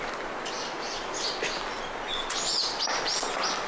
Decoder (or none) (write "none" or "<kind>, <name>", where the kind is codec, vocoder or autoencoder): none